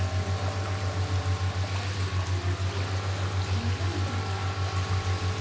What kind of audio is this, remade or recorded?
recorded